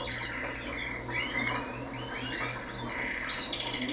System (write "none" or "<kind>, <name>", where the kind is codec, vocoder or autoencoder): none